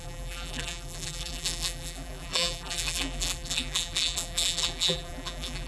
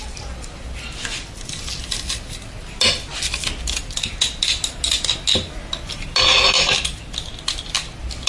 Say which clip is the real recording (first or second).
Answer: second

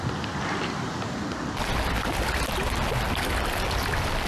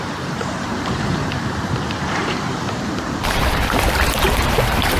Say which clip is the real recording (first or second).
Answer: first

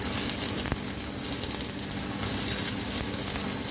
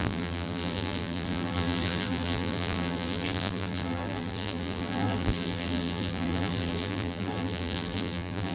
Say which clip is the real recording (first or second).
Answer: first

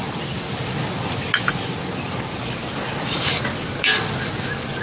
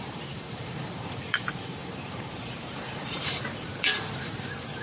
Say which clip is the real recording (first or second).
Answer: first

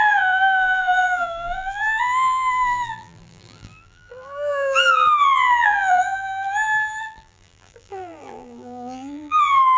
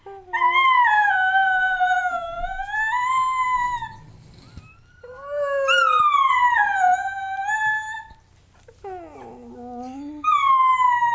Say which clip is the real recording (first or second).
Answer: second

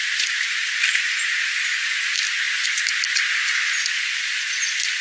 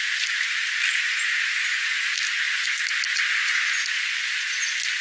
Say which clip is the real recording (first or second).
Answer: second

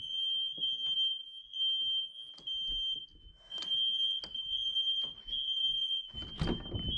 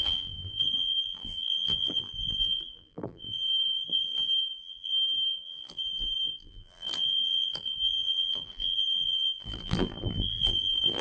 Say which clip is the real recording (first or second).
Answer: first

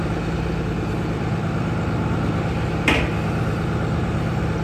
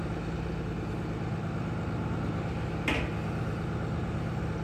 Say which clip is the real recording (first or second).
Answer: second